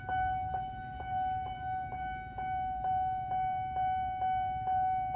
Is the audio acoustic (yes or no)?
yes